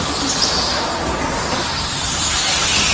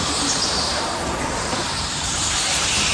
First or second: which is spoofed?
second